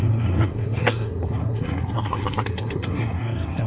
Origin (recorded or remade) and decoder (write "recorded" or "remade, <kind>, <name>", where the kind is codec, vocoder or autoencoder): remade, codec, SNAC